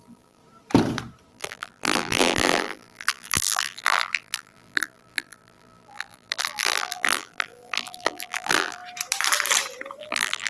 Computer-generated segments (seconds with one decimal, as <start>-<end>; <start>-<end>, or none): 0.0-0.4; 1.3-8.8; 10.0-10.5